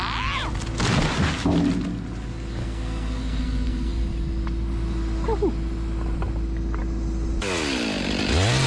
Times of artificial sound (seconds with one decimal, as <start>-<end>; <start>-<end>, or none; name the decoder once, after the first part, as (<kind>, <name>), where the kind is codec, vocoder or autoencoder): 2.6-3.9 (codec, SNAC)